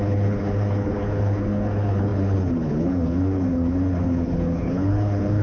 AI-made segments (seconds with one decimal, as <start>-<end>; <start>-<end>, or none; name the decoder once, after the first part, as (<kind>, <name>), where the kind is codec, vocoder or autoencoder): 0.0-5.4 (codec, HILCodec)